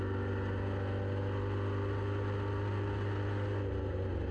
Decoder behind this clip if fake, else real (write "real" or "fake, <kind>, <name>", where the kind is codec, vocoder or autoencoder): real